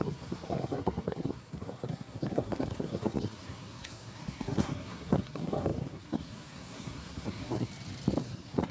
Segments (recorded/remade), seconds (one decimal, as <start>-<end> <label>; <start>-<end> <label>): 0.0-7.7 remade; 7.7-8.2 recorded; 8.2-8.7 remade